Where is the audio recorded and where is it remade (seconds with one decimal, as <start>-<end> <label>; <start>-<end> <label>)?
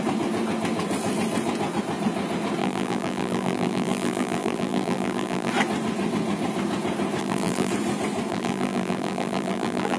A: 0.0-2.6 recorded; 2.6-5.5 remade; 5.5-7.2 recorded; 7.2-7.7 remade; 7.7-8.3 recorded; 8.3-10.0 remade